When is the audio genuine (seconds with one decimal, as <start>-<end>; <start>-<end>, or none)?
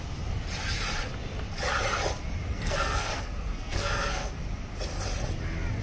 0.0-2.5; 4.4-5.8